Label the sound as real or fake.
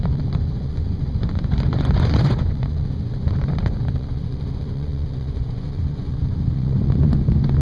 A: fake